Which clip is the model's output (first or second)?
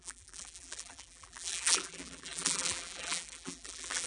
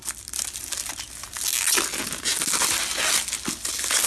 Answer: first